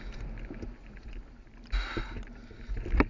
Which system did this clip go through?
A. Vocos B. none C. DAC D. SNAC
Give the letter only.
B